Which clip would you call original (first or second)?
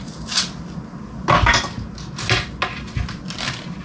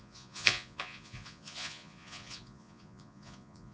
first